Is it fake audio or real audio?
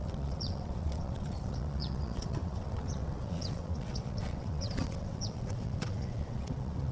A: fake